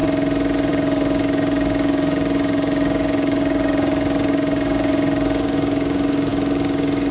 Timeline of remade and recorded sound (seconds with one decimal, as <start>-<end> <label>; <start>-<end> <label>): 0.0-0.7 recorded; 0.7-7.1 remade